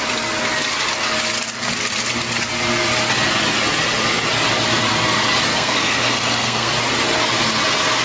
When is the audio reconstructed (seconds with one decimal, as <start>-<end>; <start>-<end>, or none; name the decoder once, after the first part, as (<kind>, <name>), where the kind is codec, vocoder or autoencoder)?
5.5-6.7 (codec, SNAC)